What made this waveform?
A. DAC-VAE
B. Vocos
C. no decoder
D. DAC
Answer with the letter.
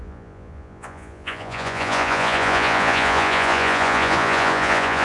B